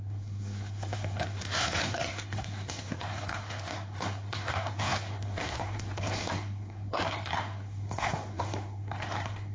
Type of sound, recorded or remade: remade